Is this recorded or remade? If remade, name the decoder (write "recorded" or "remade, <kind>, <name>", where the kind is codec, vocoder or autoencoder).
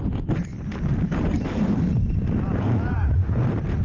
recorded